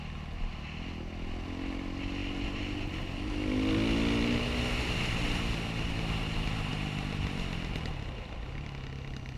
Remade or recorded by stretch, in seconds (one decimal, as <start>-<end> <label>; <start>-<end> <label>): 0.0-9.4 recorded

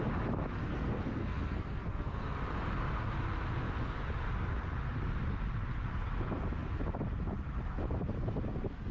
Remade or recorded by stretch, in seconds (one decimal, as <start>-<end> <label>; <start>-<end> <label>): 0.0-0.6 recorded; 0.6-2.4 remade; 2.4-8.9 recorded